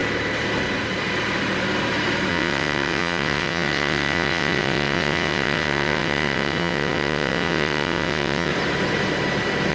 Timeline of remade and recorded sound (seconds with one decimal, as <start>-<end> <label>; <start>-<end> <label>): 0.0-2.3 recorded; 2.3-8.5 remade; 8.5-9.7 recorded